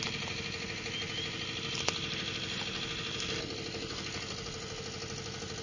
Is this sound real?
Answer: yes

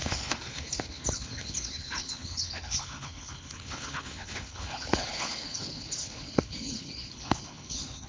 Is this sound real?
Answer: no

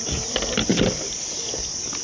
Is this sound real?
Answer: yes